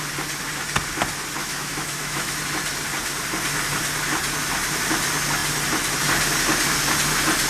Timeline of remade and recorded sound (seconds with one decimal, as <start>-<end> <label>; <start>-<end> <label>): 0.0-1.4 recorded; 1.4-2.4 remade; 2.4-7.5 recorded